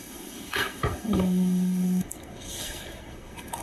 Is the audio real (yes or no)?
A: no